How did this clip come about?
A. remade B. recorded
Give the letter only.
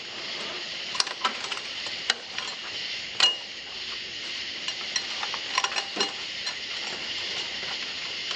B